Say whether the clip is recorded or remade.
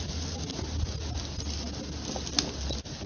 recorded